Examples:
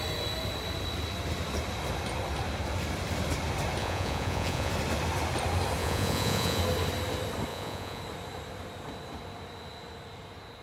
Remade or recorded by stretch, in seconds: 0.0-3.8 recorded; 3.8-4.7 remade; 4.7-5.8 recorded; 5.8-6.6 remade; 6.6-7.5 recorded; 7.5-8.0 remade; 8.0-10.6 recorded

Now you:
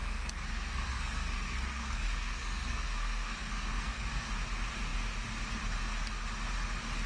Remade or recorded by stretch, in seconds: 0.0-4.3 remade; 4.3-7.1 recorded

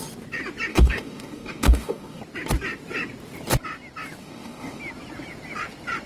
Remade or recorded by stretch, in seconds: 0.0-0.7 recorded; 0.7-2.2 remade; 2.2-4.2 recorded; 4.2-4.8 remade; 4.8-6.1 recorded

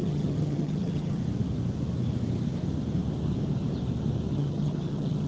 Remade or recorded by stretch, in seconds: 0.0-1.2 remade; 1.2-4.3 recorded; 4.3-5.3 remade

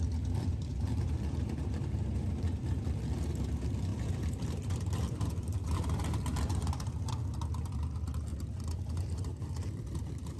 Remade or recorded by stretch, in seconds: 0.0-0.7 recorded; 0.7-2.8 remade; 2.8-3.9 recorded; 3.9-7.1 remade; 7.1-8.3 recorded; 8.3-10.4 remade

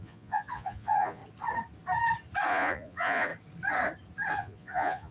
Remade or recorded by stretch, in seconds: 0.0-1.2 remade; 1.2-2.5 recorded; 2.5-3.3 remade; 3.3-4.3 recorded; 4.3-5.1 remade

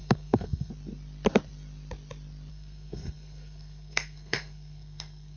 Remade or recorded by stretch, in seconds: 0.0-0.7 remade; 0.7-2.5 recorded; 2.5-5.4 remade